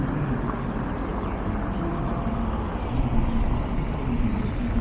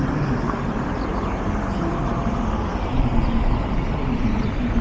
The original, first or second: first